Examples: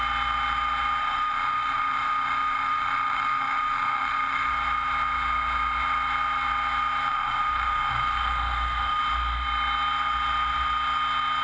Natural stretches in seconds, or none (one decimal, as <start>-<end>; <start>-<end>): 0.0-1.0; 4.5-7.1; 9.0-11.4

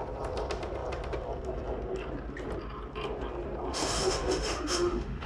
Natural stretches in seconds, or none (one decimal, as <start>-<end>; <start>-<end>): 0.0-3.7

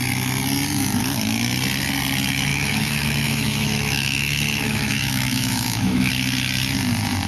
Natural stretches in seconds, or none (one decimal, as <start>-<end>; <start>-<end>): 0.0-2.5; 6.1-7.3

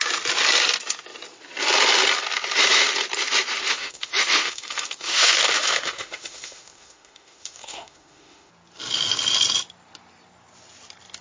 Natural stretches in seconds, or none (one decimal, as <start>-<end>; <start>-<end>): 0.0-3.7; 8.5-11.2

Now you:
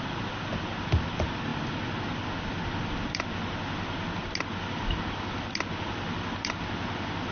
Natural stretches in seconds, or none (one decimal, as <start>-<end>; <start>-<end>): 0.0-7.3

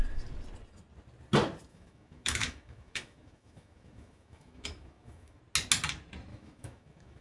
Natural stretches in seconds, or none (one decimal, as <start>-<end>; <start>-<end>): 0.0-1.7; 5.4-6.3

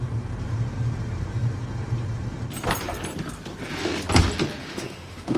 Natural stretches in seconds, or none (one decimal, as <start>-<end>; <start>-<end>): 0.0-4.6

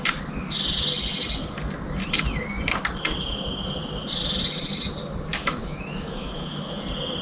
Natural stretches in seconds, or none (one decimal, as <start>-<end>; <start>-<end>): 0.0-5.3; 6.8-7.2